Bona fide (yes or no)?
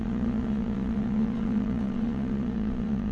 no